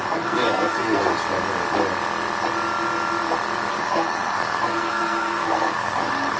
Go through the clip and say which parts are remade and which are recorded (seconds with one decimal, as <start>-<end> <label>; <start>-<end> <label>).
0.0-1.1 remade; 1.1-3.7 recorded; 3.7-6.4 remade